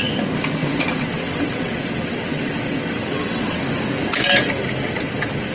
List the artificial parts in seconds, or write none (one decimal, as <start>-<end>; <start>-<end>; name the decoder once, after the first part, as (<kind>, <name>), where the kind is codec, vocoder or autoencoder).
0.6-3.6 (vocoder, WaveNeXt)